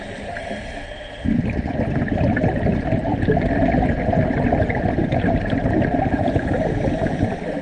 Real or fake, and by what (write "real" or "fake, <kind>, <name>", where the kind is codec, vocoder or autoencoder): real